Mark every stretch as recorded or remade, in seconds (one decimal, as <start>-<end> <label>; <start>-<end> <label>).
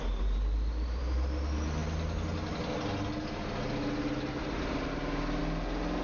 0.0-6.0 recorded